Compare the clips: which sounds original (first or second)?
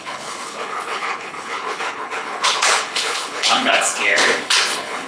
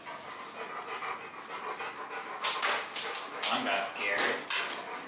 second